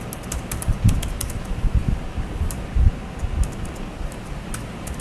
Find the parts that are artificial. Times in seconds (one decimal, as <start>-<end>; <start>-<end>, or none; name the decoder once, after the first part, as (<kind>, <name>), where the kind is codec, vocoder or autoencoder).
none